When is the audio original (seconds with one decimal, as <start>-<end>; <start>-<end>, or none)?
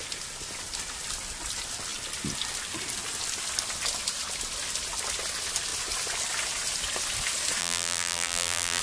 0.0-7.6